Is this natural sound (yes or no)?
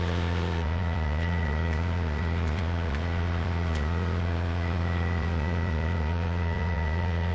no